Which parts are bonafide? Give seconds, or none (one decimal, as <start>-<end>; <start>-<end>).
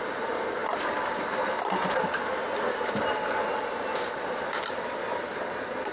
0.0-5.9